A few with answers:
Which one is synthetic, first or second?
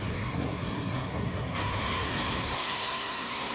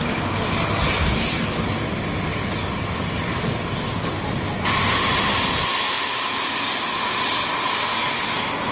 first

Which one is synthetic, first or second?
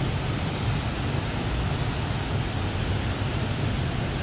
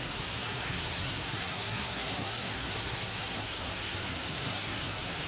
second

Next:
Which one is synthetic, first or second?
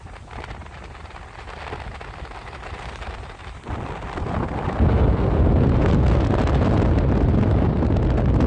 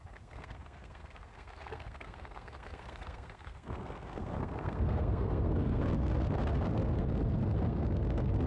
second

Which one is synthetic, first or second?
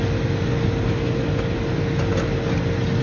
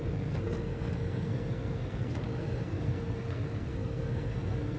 second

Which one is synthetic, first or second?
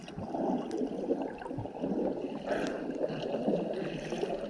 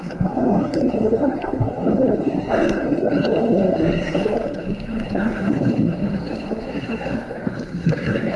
second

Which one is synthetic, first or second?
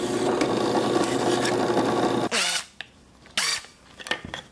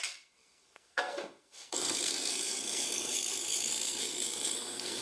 second